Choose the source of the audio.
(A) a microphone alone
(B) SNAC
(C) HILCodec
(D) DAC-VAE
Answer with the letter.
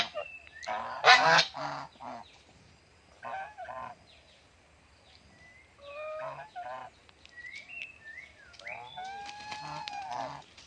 A